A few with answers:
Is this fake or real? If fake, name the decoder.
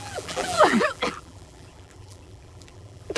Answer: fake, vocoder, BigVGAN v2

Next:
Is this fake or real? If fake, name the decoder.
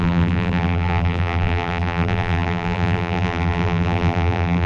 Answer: fake, vocoder, BigVGAN v2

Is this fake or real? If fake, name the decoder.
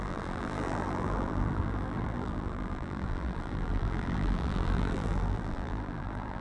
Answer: fake, vocoder, BigVGAN v2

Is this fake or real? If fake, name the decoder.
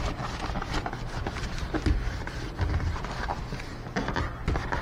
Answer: real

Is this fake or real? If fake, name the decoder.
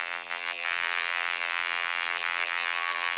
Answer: fake, vocoder, BigVGAN v2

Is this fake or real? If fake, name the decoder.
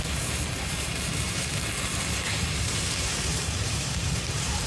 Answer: fake, vocoder, BigVGAN v2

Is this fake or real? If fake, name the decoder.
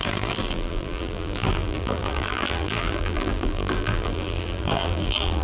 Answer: fake, vocoder, BigVGAN v2